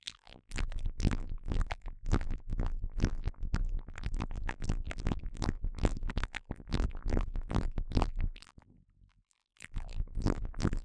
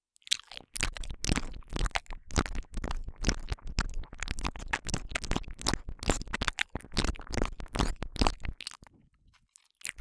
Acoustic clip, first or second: second